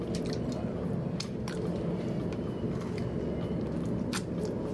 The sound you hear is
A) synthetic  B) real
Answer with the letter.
B